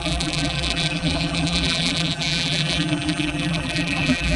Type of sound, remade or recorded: remade